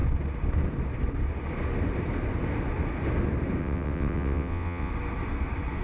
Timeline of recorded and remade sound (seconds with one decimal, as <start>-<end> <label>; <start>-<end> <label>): 0.0-3.6 recorded; 3.6-4.9 remade; 4.9-5.8 recorded